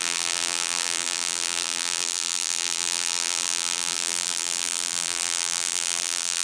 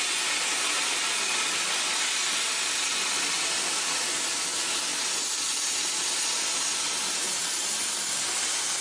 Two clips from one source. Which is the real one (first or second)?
second